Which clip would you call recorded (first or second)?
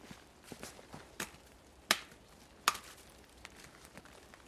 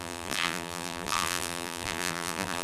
first